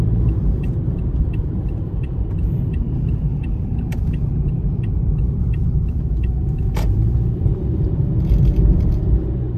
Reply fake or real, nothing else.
fake